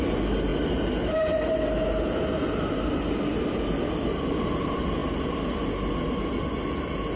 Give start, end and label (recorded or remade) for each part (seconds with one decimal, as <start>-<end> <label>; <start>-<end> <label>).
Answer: 0.0-7.2 recorded